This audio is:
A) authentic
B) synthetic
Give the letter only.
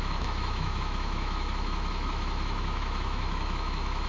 B